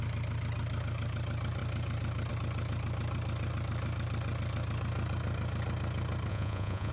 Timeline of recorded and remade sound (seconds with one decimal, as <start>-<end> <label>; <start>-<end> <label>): 0.0-6.3 recorded; 6.3-6.9 remade

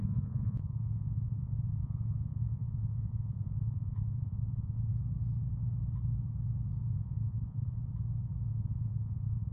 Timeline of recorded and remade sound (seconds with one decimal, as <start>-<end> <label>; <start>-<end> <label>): 0.0-4.9 remade; 4.9-6.9 recorded; 6.9-7.8 remade; 7.8-8.5 recorded; 8.5-9.5 remade

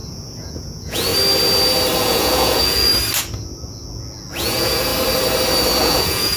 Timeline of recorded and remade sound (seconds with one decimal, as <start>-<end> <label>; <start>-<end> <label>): 0.0-1.1 remade; 1.1-2.0 recorded; 2.0-2.9 remade; 2.9-4.4 recorded; 4.4-4.9 remade; 4.9-5.8 recorded; 5.8-6.4 remade